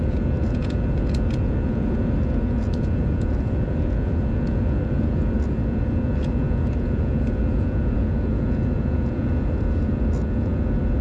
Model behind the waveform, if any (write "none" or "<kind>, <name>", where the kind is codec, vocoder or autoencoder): vocoder, Vocos